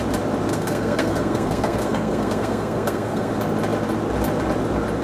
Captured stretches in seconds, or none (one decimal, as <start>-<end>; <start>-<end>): 0.0-0.5; 3.3-5.0